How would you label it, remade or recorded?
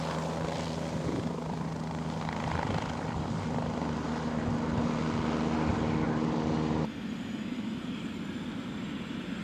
recorded